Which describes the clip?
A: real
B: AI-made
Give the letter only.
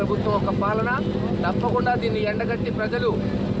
A